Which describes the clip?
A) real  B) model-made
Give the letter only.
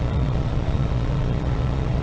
B